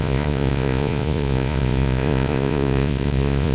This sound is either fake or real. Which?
fake